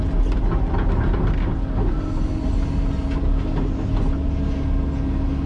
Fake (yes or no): no